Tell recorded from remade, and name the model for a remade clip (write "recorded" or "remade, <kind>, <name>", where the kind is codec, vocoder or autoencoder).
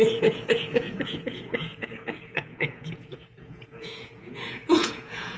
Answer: remade, vocoder, Vocos